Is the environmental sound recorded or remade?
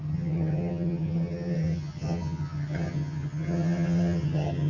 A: remade